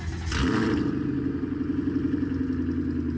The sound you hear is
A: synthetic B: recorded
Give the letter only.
B